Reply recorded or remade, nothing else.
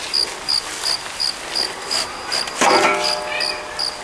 recorded